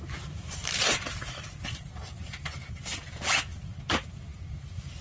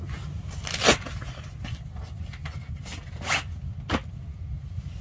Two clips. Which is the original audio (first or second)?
second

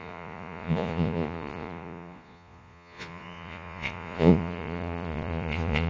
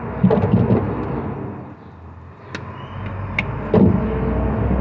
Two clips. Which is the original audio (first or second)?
second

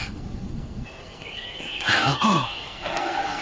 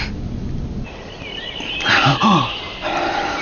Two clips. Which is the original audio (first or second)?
second